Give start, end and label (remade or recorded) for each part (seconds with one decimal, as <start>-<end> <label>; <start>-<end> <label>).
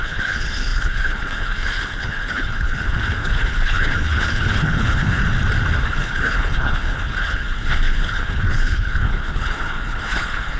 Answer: 0.0-5.2 remade; 5.2-5.9 recorded; 5.9-10.6 remade